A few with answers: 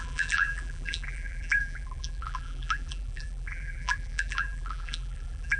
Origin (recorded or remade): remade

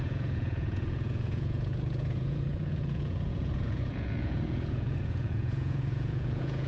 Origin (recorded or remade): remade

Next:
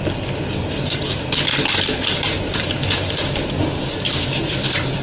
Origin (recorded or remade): remade